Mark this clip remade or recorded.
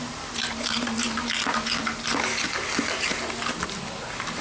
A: recorded